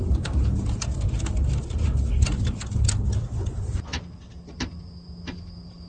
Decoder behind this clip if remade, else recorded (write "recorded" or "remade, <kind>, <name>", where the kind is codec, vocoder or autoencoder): recorded